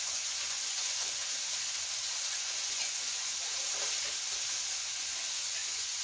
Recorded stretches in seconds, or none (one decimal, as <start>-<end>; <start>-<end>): 1.2-2.3; 3.3-4.8